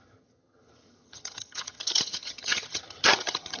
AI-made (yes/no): yes